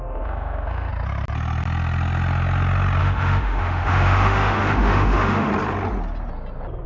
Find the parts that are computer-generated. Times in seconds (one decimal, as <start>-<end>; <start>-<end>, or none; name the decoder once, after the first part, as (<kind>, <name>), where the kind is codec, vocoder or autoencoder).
0.0-0.9 (autoencoder, DAC-VAE); 3.0-5.5